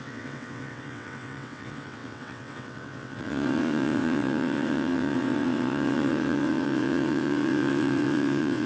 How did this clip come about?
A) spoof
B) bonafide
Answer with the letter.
A